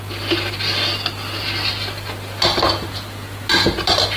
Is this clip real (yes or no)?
yes